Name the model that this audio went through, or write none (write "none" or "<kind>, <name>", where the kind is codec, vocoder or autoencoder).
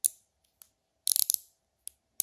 none